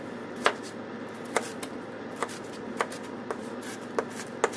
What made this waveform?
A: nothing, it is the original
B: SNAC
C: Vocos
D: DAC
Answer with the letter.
A